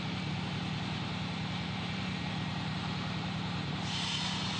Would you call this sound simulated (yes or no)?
yes